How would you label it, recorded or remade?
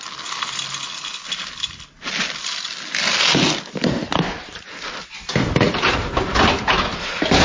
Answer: recorded